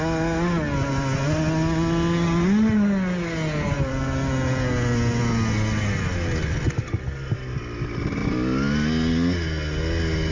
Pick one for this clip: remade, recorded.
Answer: recorded